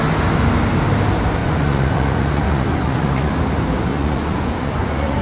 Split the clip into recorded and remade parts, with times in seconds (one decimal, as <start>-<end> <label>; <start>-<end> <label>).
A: 0.0-1.4 recorded; 1.4-3.3 remade; 3.3-3.9 recorded; 3.9-5.2 remade